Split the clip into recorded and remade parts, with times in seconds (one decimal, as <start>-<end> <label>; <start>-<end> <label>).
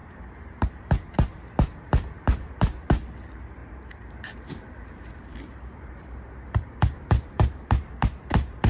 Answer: 0.0-2.8 remade; 2.8-3.6 recorded; 3.6-7.7 remade; 7.7-8.7 recorded